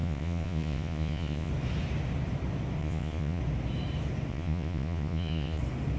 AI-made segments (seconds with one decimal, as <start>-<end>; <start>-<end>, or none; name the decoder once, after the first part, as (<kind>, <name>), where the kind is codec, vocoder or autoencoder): 0.0-1.5 (vocoder, Vocos); 2.8-3.4; 4.3-5.6